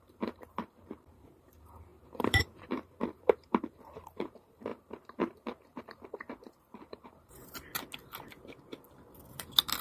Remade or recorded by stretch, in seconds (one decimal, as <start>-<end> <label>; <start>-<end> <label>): 0.0-7.7 remade; 7.7-9.8 recorded